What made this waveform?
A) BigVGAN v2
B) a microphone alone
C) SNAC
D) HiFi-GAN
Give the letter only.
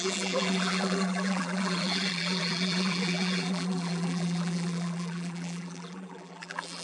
A